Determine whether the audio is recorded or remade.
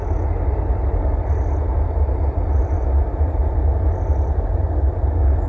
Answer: recorded